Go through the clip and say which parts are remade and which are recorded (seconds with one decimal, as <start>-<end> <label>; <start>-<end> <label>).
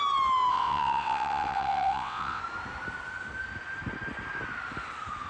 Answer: 0.0-0.5 recorded; 0.5-2.4 remade; 2.4-5.3 recorded